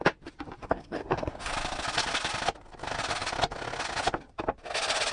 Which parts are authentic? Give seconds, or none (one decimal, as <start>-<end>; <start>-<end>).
0.0-0.6; 1.5-5.1